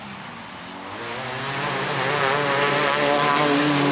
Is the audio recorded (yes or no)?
yes